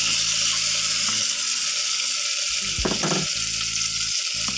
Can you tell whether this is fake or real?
real